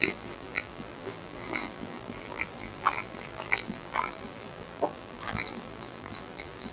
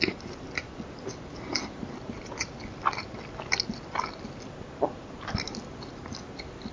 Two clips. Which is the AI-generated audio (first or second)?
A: first